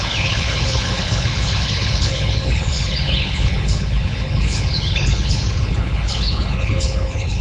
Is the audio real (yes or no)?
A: no